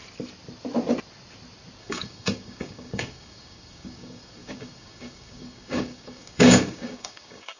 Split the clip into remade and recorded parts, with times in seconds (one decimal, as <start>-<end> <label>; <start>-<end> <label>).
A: 0.0-1.8 recorded; 1.8-7.6 remade